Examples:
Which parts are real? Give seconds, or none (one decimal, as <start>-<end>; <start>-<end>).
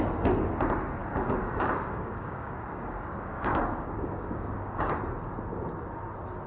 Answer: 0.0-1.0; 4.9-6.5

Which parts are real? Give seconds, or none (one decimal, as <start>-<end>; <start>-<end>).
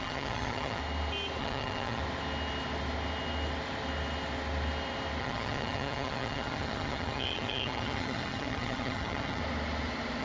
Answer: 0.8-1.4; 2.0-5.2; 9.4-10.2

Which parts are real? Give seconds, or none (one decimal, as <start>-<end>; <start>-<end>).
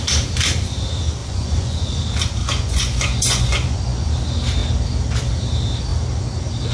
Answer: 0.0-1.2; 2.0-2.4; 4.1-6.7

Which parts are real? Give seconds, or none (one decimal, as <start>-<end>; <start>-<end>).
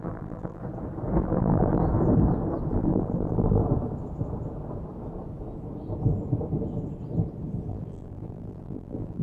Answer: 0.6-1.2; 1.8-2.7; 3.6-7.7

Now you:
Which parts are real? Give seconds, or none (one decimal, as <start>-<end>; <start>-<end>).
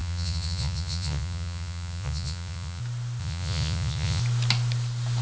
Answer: 2.8-3.2; 4.2-5.2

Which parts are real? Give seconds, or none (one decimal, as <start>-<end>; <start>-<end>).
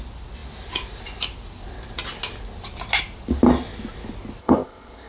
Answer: 0.0-4.4